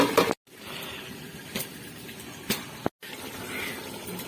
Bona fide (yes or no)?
yes